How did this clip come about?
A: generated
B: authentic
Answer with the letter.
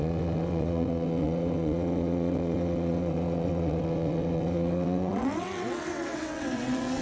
A